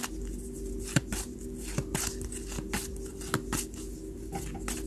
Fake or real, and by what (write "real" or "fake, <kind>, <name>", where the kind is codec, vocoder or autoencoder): real